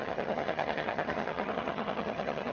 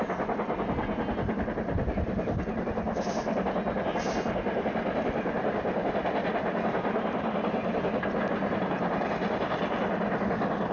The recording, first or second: second